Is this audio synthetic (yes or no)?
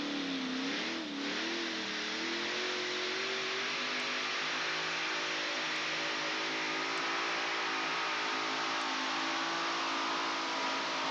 no